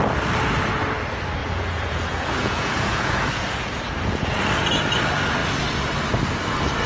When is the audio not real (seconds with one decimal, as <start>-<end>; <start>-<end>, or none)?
1.4-4.4